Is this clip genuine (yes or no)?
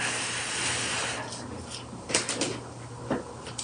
yes